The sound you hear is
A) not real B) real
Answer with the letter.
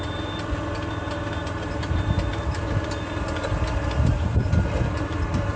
B